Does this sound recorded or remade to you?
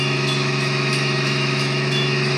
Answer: remade